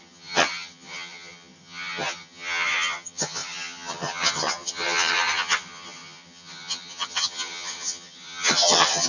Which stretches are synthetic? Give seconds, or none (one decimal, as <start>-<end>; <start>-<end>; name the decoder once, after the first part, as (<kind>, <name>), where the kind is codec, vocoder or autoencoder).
0.0-9.1 (vocoder, HiFi-GAN)